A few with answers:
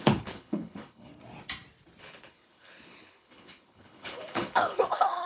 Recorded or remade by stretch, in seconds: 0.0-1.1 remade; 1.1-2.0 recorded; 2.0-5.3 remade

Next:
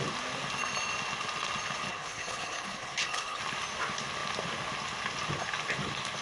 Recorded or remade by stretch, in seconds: 0.0-1.9 recorded; 1.9-3.4 remade; 3.4-6.2 recorded

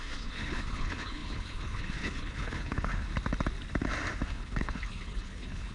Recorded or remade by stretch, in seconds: 0.0-3.1 remade; 3.1-4.3 recorded; 4.3-5.7 remade

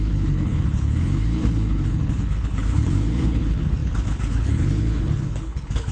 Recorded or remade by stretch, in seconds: 0.0-5.9 remade